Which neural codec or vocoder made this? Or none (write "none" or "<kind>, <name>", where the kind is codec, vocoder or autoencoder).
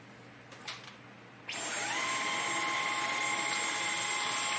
none